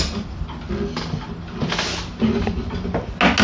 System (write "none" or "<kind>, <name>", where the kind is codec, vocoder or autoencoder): none